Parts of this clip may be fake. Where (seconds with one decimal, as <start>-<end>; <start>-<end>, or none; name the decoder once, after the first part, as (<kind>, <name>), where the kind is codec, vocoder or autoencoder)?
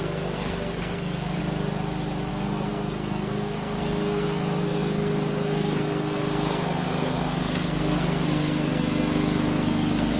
0.0-1.4 (codec, SNAC); 2.3-10.2